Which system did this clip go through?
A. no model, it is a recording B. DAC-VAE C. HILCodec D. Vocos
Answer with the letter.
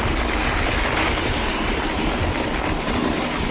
A